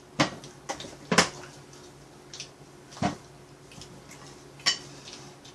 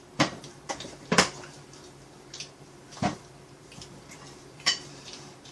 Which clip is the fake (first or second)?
second